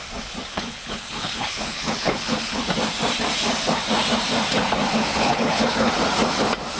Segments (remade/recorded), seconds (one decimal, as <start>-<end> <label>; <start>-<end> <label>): 0.0-0.5 recorded; 0.5-2.6 remade; 2.6-5.1 recorded; 5.1-5.9 remade; 5.9-6.8 recorded